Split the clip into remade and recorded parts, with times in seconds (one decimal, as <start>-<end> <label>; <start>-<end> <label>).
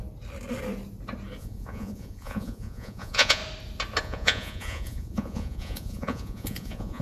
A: 0.0-1.4 recorded; 1.4-3.4 remade; 3.4-4.0 recorded; 4.0-7.0 remade